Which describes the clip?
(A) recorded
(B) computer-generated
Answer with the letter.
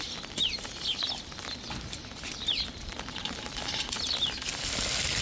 A